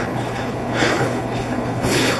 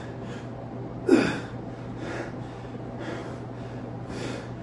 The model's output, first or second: first